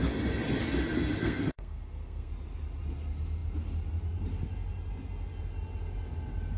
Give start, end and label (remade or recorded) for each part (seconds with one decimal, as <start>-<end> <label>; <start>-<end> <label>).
0.0-1.2 recorded; 1.2-2.3 remade; 2.3-6.6 recorded